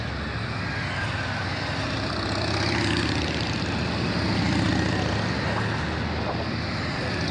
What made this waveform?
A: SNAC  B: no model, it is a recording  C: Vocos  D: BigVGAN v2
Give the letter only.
B